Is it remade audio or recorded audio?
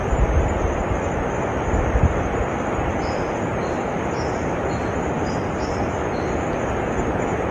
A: remade